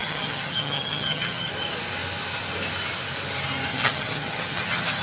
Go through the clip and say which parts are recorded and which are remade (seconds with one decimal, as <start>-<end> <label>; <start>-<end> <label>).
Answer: 0.0-1.5 remade; 1.5-3.7 recorded; 3.7-5.0 remade